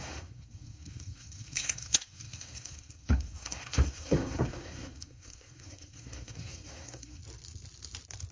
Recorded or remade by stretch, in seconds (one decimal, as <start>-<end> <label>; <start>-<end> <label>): 0.0-7.2 remade; 7.2-8.3 recorded